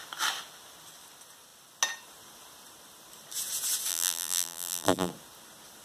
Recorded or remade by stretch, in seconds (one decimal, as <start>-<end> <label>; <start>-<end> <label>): 0.0-3.9 recorded; 3.9-5.1 remade; 5.1-5.8 recorded